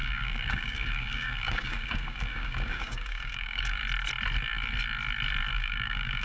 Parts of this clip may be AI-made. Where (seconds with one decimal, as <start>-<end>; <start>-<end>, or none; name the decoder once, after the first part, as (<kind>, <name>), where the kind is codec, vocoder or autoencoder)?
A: 0.0-3.8 (codec, DAC); 5.5-6.2

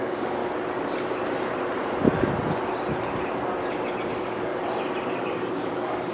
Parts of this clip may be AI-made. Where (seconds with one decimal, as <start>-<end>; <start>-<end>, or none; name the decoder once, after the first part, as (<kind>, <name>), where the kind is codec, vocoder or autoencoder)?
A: 0.0-0.4 (codec, DAC); 4.1-4.5; 5.1-6.1